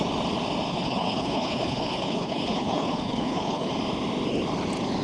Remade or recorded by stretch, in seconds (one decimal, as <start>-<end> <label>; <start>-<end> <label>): 0.0-0.7 recorded; 0.7-3.7 remade; 3.7-5.0 recorded